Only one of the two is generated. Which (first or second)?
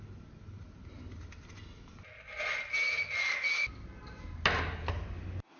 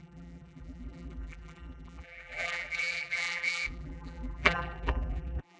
second